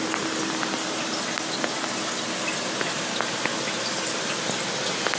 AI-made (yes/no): no